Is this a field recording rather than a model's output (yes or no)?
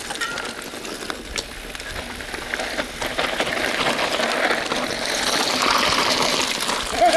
yes